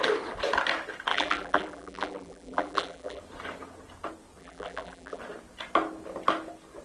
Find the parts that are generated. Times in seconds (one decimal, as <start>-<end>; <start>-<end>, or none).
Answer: 1.1-3.2; 4.4-5.2